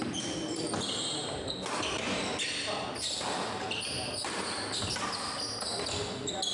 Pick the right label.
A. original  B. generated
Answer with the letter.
A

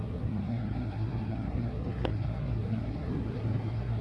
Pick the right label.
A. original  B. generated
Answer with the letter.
B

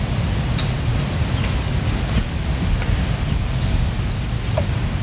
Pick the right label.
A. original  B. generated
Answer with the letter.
A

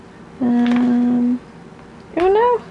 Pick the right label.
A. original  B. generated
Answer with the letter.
A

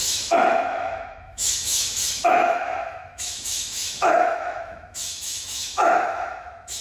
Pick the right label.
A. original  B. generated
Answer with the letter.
B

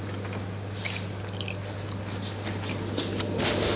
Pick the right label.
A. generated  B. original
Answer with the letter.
B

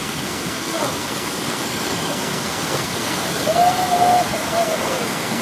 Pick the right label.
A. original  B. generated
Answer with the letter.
B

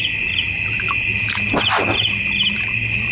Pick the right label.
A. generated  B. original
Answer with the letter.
B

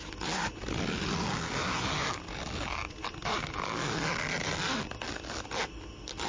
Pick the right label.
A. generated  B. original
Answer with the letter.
B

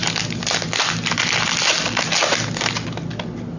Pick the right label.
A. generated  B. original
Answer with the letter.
B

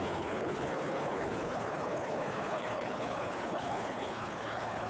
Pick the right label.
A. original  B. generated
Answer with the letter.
B